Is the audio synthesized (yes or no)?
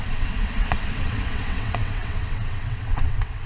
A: yes